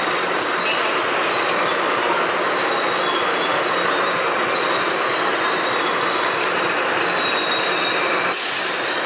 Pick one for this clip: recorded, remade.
recorded